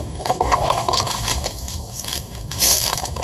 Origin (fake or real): fake